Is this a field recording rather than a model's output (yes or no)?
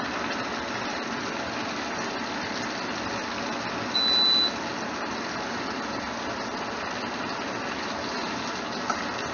yes